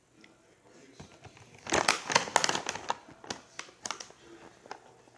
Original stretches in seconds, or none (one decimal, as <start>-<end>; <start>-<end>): 0.0-5.2